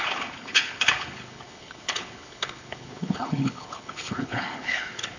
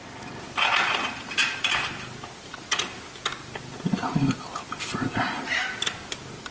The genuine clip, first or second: second